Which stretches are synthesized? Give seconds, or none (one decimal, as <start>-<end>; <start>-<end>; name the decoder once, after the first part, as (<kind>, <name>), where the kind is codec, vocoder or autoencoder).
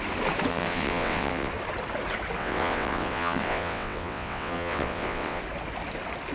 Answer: 0.5-1.5 (vocoder, WaveNeXt); 2.4-5.4